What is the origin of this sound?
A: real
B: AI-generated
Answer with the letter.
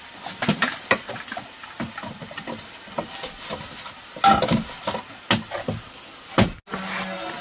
A